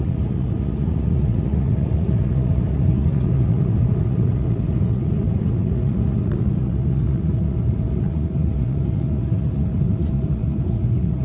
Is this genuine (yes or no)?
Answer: no